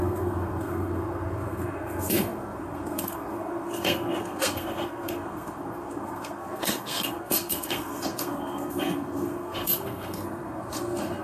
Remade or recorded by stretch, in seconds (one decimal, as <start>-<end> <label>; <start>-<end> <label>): 0.0-11.2 remade